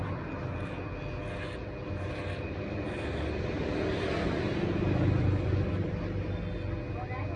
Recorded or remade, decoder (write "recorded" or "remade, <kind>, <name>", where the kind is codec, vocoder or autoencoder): recorded